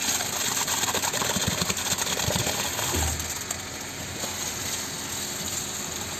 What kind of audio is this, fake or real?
real